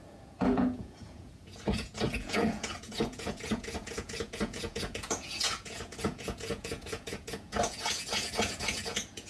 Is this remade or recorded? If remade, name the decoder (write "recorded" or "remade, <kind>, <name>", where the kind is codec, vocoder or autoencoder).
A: remade, vocoder, Vocos